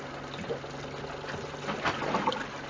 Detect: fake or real real